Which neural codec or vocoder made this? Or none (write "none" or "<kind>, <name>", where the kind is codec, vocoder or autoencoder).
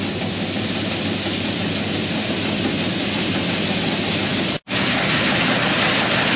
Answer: none